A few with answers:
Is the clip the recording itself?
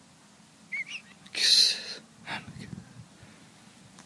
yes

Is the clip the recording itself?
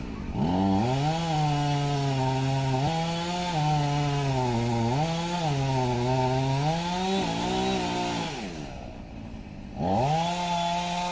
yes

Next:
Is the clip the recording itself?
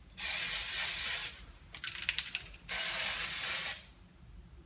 yes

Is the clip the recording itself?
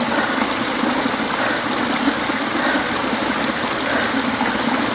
yes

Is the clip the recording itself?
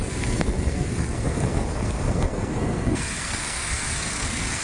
no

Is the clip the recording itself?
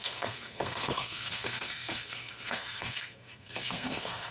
no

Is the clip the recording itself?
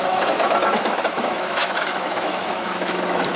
no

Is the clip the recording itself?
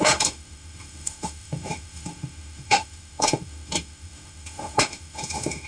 no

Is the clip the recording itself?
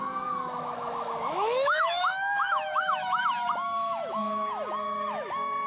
no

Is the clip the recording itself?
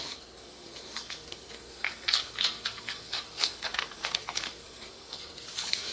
no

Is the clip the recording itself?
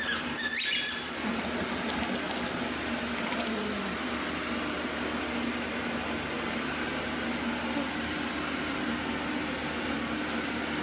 yes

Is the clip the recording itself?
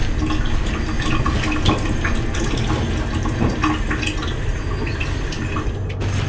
yes